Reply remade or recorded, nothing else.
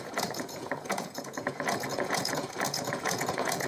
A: remade